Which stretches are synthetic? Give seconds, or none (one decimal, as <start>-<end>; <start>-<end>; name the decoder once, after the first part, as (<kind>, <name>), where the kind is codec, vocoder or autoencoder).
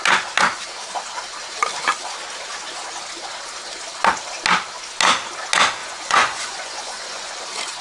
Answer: 5.8-7.3 (vocoder, Vocos)